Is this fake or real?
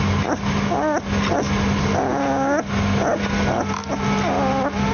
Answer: real